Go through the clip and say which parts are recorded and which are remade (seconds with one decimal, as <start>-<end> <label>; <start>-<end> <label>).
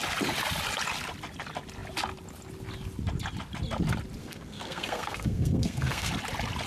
0.0-4.2 recorded; 4.2-6.1 remade; 6.1-6.7 recorded